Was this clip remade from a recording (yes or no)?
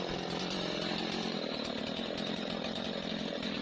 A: yes